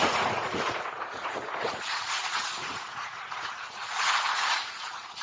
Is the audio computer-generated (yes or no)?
yes